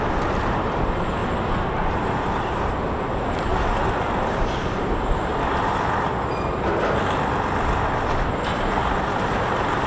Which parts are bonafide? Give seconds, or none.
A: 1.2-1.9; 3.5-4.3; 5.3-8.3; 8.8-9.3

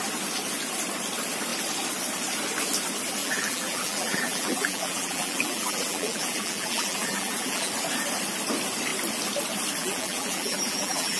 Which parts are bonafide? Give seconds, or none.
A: 0.0-3.2; 7.7-9.8